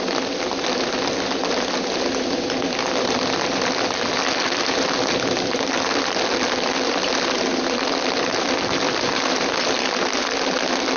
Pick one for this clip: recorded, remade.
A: recorded